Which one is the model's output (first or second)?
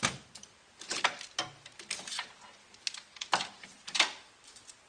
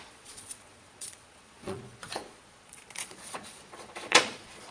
second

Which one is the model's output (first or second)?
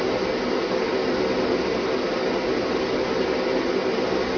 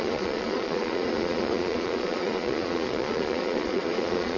second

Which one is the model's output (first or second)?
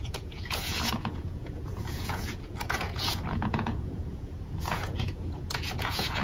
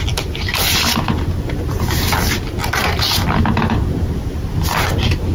first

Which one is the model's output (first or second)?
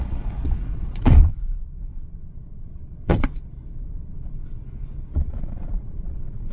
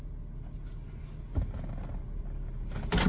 first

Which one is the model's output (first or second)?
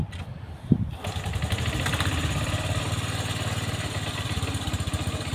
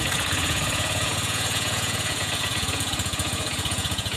second